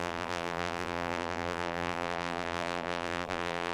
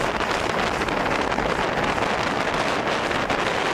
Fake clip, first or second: first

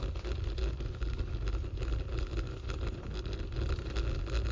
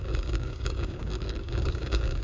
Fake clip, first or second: second